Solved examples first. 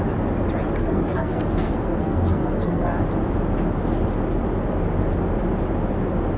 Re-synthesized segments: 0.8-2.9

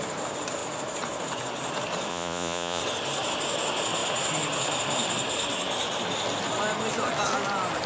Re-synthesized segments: 2.1-2.8

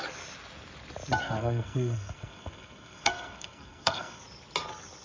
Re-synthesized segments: 1.2-4.2

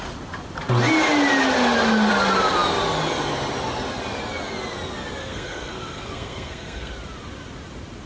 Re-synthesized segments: 5.2-6.9

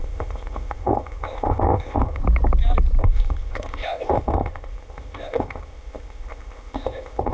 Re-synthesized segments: 0.0-2.2; 3.0-7.3

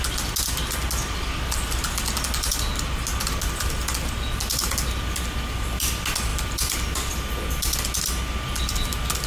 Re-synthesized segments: none